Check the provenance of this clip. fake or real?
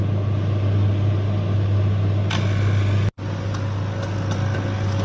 real